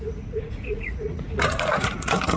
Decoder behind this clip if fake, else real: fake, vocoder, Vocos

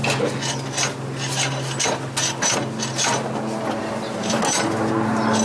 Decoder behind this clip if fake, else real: real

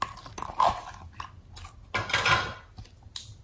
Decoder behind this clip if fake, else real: real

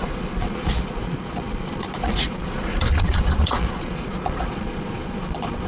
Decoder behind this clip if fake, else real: fake, vocoder, Vocos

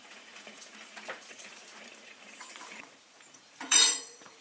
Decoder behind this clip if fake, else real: fake, vocoder, Vocos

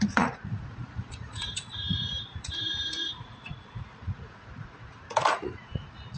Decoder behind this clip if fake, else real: fake, vocoder, Vocos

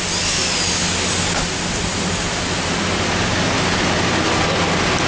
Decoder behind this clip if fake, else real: real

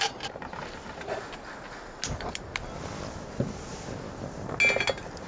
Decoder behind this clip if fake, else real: real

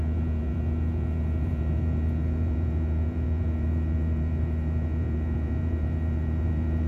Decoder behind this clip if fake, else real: fake, vocoder, Vocos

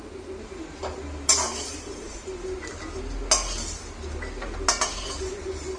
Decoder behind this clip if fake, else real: real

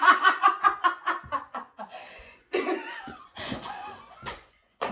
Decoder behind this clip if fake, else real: fake, vocoder, Vocos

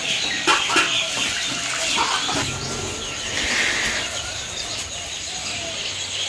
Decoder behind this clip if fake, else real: real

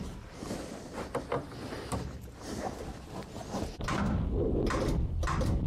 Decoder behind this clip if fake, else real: real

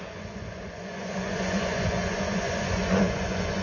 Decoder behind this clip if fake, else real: fake, vocoder, Vocos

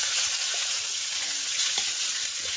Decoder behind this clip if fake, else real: fake, vocoder, Vocos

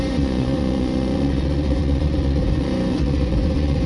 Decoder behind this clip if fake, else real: fake, vocoder, Vocos